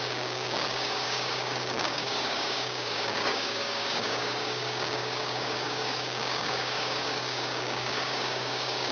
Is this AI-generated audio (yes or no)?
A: yes